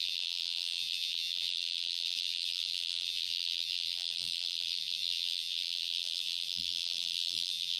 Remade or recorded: remade